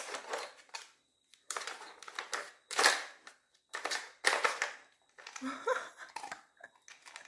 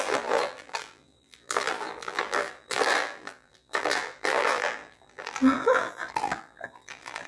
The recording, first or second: first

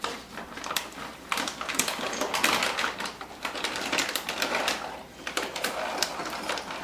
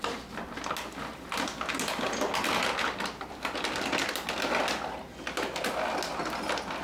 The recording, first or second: second